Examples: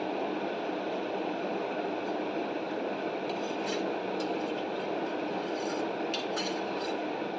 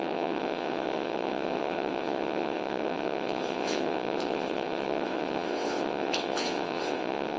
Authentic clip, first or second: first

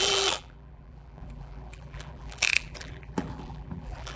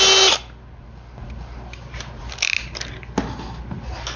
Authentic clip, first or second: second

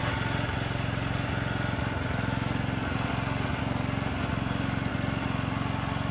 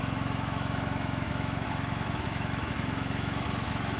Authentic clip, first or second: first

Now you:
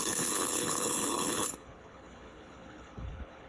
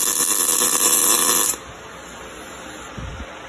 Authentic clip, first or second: second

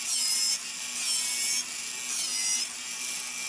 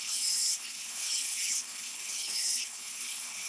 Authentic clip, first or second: first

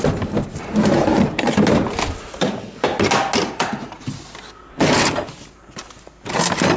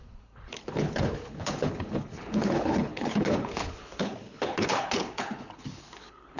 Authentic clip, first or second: first